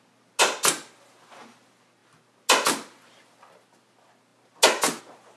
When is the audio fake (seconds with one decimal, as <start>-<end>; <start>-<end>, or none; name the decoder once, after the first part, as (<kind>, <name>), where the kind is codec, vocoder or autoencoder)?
none